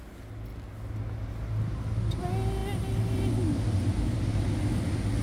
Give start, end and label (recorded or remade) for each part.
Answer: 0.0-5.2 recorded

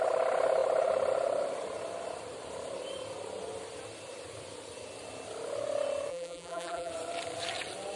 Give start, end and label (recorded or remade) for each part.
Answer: 0.0-6.1 recorded; 6.1-6.9 remade; 6.9-8.0 recorded

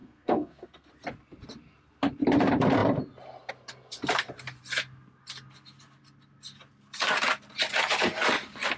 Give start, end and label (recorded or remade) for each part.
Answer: 0.0-0.9 remade; 0.9-8.8 recorded

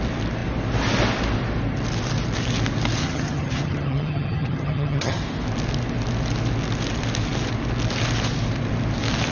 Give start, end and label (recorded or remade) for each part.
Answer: 0.0-3.0 recorded; 3.0-5.2 remade; 5.2-9.3 recorded